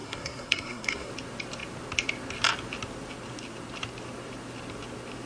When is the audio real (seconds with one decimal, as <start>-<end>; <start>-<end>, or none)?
1.1-5.3